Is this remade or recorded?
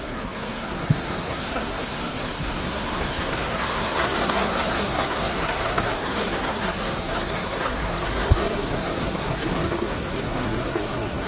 remade